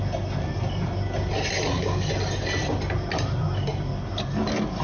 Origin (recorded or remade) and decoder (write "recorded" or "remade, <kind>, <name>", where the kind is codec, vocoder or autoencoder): recorded